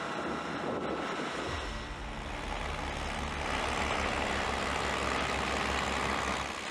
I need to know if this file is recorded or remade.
recorded